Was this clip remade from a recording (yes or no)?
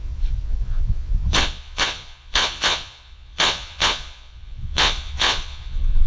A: yes